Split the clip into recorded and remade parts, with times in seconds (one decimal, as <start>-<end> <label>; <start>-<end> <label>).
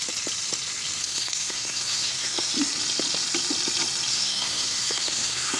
0.0-1.0 recorded; 1.0-2.5 remade; 2.5-4.1 recorded; 4.1-5.6 remade